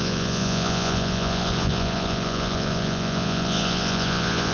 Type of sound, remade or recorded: remade